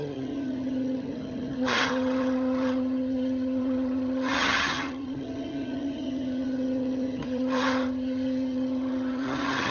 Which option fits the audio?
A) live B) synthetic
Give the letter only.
B